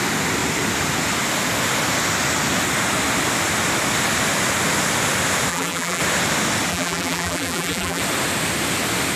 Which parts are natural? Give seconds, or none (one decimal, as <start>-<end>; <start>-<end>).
0.0-5.5; 6.0-6.7; 8.0-9.2